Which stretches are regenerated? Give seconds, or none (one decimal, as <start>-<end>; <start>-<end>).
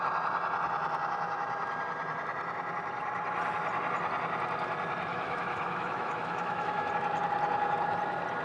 5.1-6.9